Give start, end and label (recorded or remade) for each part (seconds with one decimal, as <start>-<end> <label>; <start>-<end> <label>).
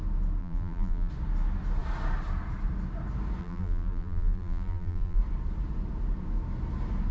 0.0-0.4 recorded; 0.4-1.1 remade; 1.1-3.4 recorded; 3.4-5.2 remade; 5.2-7.1 recorded